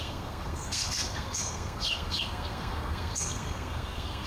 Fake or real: fake